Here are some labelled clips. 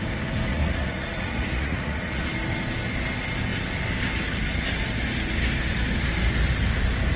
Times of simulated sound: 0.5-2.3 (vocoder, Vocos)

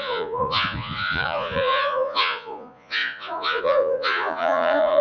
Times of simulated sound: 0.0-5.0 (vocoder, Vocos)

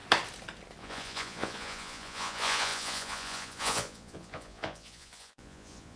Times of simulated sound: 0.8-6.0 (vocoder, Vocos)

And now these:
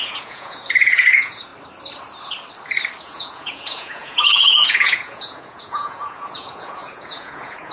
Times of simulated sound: 0.0-1.5 (vocoder, Vocos); 3.0-7.7

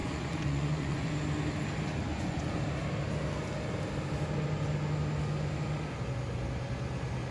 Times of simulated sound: 0.0-1.1 (vocoder, Vocos); 2.1-2.6